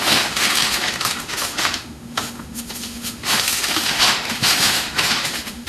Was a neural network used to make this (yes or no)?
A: yes